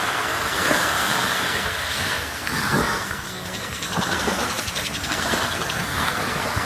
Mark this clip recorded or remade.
remade